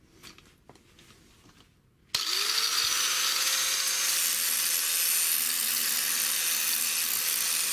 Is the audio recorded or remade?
recorded